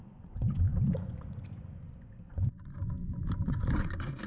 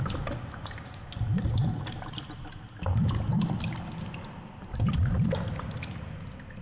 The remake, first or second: first